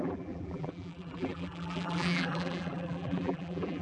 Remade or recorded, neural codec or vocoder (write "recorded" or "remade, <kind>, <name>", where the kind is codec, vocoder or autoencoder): remade, vocoder, BigVGAN v2